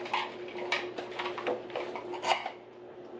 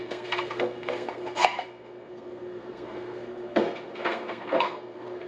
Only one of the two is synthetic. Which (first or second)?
second